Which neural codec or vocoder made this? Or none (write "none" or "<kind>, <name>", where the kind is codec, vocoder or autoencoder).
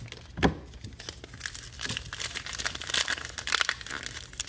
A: none